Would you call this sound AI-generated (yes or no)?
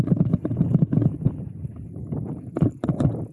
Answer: no